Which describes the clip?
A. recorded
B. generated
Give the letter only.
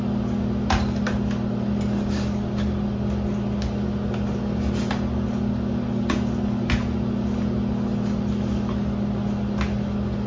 A